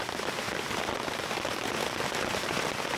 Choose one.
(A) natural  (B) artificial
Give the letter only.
A